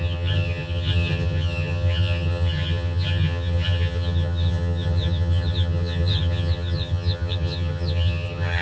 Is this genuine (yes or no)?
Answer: no